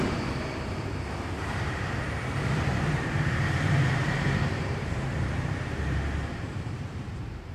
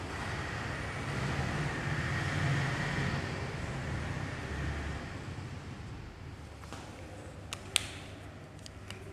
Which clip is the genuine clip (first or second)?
second